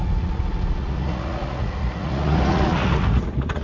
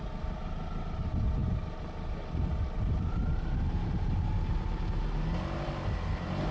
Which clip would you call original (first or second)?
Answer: second